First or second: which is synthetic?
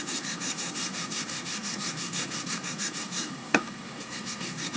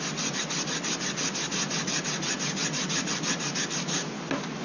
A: first